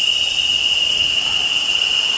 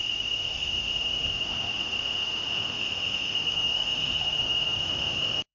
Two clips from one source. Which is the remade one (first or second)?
second